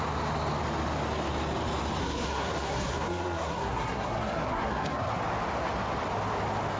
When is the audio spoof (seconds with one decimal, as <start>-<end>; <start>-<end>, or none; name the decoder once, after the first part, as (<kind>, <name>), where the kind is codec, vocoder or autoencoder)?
2.0-5.2 (codec, SNAC)